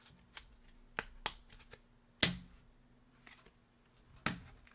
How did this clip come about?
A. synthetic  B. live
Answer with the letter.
B